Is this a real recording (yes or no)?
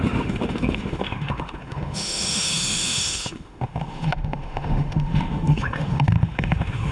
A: no